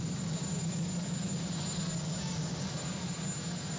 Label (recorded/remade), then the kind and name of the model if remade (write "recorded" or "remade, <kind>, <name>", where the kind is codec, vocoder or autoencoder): recorded